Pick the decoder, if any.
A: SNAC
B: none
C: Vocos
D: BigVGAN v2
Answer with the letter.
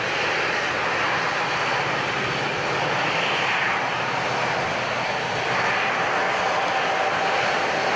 B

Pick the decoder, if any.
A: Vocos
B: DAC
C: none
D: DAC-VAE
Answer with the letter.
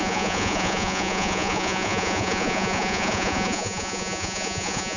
A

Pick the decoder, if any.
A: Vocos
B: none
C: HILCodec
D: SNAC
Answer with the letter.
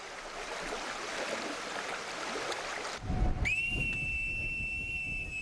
B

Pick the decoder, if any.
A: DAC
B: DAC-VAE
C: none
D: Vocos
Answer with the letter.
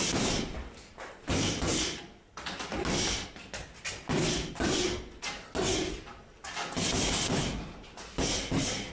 C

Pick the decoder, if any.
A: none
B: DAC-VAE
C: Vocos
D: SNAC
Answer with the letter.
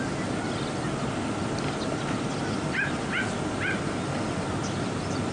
A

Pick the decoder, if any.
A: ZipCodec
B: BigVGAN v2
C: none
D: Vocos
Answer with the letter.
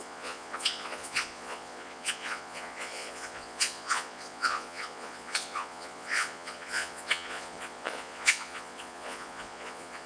D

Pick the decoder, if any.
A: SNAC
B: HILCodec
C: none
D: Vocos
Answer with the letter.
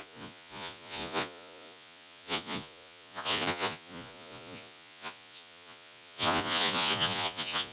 D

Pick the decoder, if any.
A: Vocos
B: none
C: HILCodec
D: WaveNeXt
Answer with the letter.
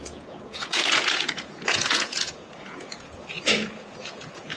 A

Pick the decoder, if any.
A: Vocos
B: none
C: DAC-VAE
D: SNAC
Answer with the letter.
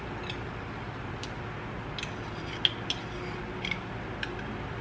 B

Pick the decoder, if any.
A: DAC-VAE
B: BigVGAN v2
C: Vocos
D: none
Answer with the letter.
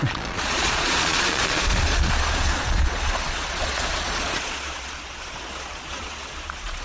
C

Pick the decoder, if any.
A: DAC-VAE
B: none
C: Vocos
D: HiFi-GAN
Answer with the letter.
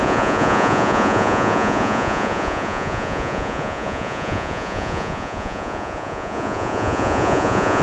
C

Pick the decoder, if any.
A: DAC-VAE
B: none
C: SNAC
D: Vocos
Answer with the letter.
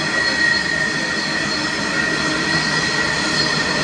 B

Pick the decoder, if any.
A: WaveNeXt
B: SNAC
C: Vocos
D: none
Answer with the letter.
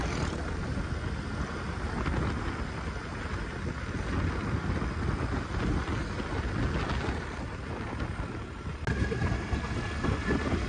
D